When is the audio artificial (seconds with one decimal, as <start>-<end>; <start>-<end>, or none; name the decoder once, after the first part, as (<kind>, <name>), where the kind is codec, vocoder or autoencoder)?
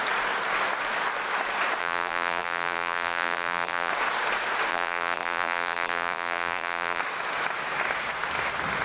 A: 1.8-3.9 (vocoder, BigVGAN v2); 4.7-7.0